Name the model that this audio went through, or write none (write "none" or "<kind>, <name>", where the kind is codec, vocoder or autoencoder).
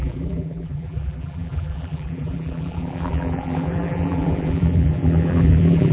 vocoder, BigVGAN v2